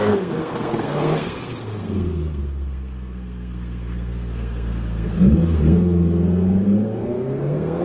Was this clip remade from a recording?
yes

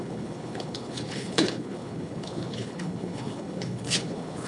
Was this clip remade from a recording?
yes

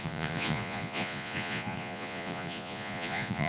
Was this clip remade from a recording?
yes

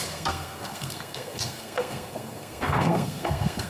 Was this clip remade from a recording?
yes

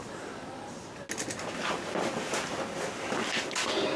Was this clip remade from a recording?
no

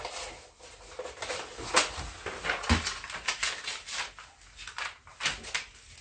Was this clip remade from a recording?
no